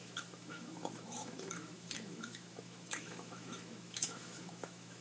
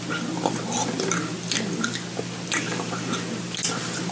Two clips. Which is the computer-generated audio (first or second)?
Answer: first